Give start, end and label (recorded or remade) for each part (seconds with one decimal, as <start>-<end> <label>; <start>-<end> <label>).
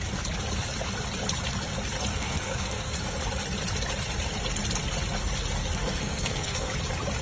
0.0-2.1 recorded; 2.1-3.0 remade; 3.0-5.6 recorded; 5.6-6.7 remade; 6.7-7.2 recorded